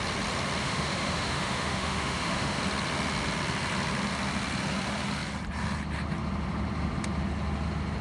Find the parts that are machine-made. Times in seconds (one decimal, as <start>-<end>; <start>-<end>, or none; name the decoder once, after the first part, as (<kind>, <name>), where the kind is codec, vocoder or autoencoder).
0.6-2.6 (autoencoder, DAC-VAE)